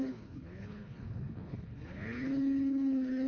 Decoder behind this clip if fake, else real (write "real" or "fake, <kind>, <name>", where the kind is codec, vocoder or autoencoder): fake, codec, HILCodec